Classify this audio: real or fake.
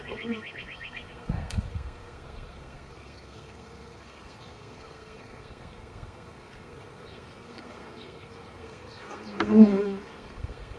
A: fake